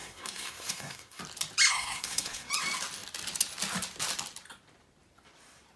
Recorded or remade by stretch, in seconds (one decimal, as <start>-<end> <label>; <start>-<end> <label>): 0.0-1.2 remade; 1.2-1.7 recorded; 1.7-2.5 remade; 2.5-5.8 recorded